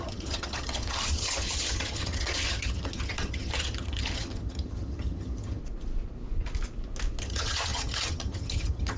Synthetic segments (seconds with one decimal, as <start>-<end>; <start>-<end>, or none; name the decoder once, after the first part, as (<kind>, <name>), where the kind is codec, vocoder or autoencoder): 0.0-5.6 (vocoder, HiFi-GAN); 7.2-9.0